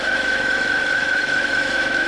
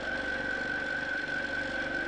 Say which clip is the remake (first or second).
first